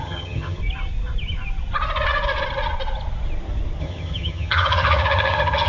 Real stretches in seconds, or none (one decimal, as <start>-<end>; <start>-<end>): 0.6-3.8